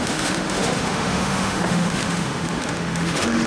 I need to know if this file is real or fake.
fake